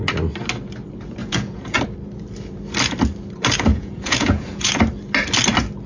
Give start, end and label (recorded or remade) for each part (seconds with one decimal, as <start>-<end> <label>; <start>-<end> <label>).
0.0-1.2 recorded; 1.2-1.8 remade; 1.8-3.7 recorded; 3.7-4.7 remade; 4.7-5.9 recorded